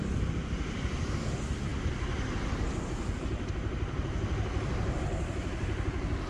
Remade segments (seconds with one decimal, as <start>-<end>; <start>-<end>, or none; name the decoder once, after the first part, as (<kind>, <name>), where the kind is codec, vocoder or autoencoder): none